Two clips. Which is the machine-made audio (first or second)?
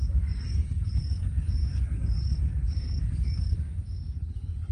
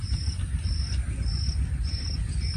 first